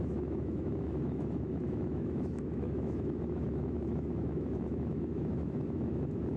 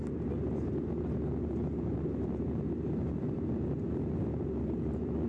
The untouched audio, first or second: second